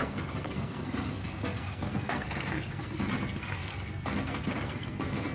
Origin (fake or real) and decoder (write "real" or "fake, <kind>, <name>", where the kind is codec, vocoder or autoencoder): fake, codec, SNAC